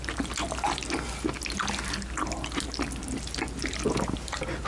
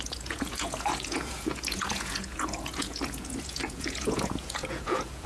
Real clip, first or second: first